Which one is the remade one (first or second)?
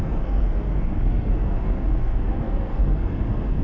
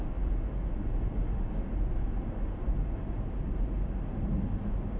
first